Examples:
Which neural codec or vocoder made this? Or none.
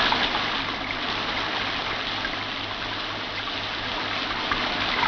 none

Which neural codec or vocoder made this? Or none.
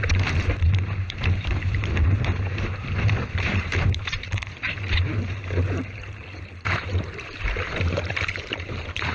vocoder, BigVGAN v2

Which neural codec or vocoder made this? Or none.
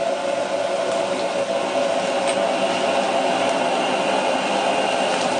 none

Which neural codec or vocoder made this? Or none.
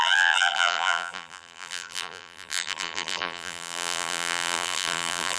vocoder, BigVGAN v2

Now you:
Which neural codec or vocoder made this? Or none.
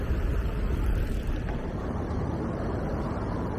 vocoder, BigVGAN v2